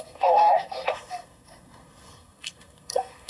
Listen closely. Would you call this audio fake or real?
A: fake